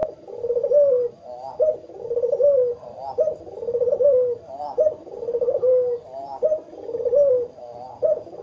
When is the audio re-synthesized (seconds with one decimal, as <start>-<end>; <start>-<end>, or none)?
none